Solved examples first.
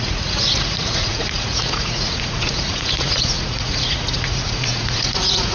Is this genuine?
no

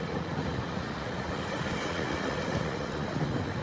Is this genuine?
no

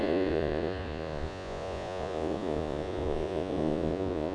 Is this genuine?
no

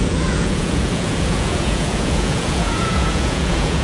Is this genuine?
no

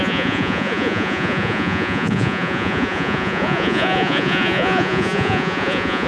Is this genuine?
no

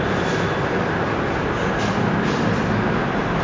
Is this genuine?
yes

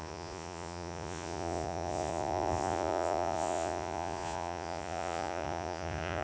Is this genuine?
no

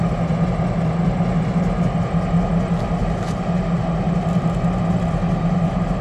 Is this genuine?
yes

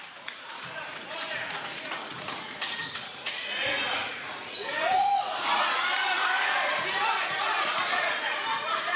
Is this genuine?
no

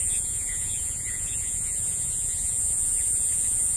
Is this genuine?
no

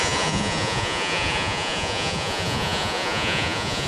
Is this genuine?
no